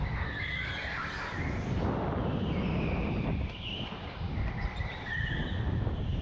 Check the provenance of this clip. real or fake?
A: real